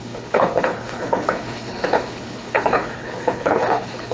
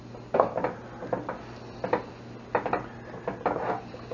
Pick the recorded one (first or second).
second